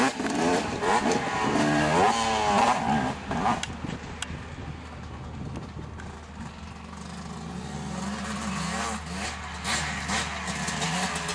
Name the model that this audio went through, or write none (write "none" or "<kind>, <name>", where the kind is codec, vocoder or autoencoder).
none